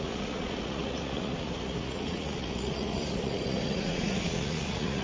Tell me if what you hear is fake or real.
fake